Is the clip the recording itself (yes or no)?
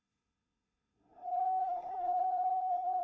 no